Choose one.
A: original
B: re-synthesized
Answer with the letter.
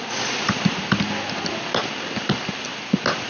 A